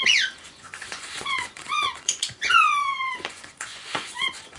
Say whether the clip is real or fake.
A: fake